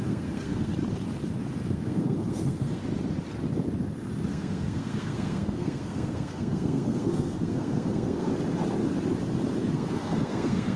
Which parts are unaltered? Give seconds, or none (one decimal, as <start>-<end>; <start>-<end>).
0.7-1.7; 2.8-4.3; 8.3-9.7